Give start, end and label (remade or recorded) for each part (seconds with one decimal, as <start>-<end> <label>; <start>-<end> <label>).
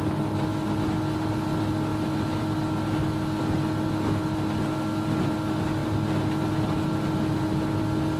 0.0-8.2 recorded